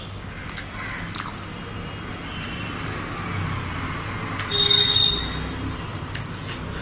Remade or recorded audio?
recorded